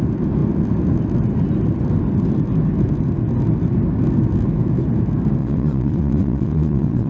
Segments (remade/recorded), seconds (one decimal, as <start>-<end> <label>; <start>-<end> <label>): 0.0-5.4 recorded; 5.4-7.1 remade